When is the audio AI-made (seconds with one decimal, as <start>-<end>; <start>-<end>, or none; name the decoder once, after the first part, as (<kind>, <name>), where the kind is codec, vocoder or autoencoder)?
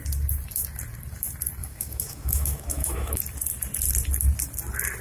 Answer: 1.6-3.2 (autoencoder, DAC-VAE)